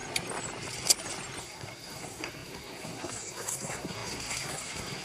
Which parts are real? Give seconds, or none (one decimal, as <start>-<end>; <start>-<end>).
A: 0.0-1.4